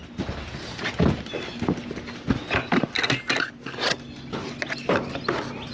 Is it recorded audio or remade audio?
recorded